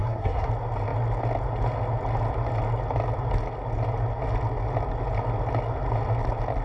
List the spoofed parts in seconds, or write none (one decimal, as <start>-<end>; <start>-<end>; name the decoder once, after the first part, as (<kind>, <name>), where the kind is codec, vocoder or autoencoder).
0.0-0.5 (codec, SNAC)